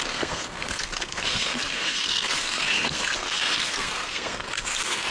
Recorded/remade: remade